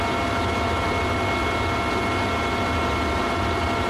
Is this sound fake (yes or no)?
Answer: no